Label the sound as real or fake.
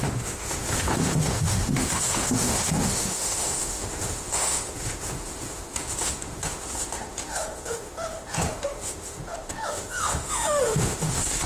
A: fake